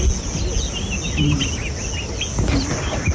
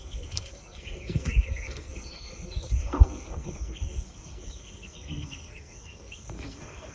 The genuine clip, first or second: first